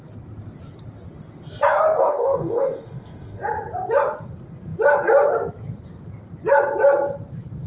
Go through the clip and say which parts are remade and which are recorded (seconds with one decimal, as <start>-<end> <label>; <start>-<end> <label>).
0.0-2.0 recorded; 2.0-3.4 remade; 3.4-7.7 recorded